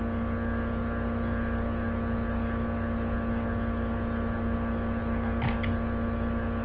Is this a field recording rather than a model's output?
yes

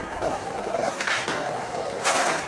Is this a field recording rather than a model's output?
no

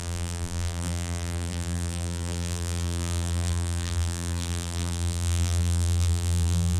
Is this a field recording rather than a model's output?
no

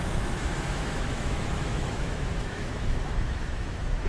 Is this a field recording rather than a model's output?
no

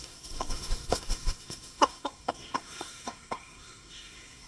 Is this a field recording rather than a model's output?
no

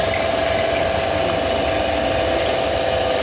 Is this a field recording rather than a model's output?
yes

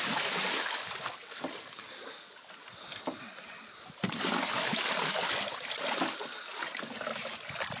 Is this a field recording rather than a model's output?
yes